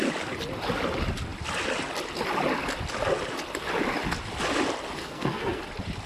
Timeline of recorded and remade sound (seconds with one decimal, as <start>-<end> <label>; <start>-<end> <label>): 0.0-5.0 recorded; 5.0-5.6 remade; 5.6-6.1 recorded